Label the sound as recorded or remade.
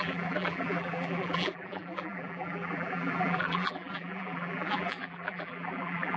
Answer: remade